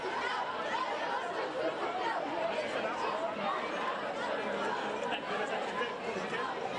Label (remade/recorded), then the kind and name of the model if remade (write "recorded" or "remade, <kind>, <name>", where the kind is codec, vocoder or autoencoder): recorded